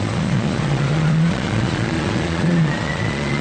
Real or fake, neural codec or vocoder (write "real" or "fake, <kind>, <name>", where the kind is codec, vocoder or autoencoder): fake, vocoder, Vocos